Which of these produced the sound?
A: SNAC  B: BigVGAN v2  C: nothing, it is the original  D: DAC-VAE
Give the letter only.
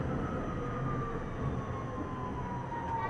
C